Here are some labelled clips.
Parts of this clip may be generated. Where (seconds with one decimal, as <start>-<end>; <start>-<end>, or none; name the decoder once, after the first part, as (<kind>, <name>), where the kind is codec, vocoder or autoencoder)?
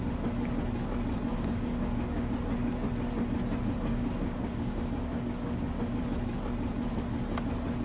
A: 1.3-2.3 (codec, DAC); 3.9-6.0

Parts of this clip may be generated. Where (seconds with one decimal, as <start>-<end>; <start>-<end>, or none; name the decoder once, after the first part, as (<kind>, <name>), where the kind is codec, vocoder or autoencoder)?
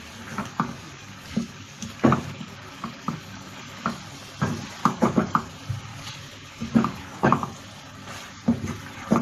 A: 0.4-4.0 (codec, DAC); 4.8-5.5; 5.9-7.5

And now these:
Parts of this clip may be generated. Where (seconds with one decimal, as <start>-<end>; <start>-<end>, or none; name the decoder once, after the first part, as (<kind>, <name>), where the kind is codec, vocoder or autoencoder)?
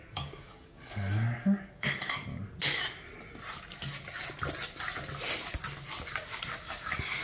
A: 0.0-2.3 (codec, DAC); 6.6-7.2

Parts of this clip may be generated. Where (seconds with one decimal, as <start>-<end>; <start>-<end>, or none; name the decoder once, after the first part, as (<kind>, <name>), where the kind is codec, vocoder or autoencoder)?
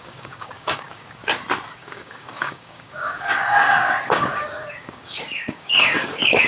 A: 0.0-1.2 (codec, DAC); 1.7-6.5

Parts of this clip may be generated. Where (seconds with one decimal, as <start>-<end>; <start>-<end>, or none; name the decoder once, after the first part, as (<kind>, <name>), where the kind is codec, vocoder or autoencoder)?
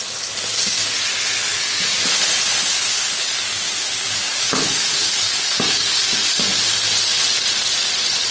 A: 1.5-2.0 (codec, DAC); 2.7-6.4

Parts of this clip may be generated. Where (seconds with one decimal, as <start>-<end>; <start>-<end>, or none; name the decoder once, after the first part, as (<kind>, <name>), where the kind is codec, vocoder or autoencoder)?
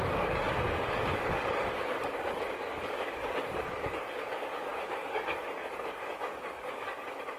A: 0.0-7.4 (codec, DAC)